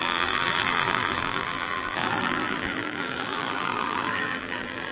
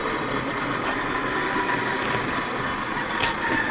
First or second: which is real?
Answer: second